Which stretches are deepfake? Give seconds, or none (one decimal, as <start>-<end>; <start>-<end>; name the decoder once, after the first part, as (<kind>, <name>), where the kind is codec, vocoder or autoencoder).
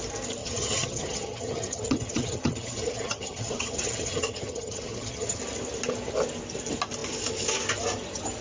0.4-5.4 (vocoder, HiFi-GAN)